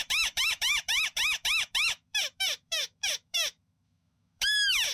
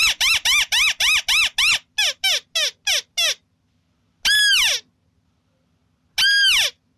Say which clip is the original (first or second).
second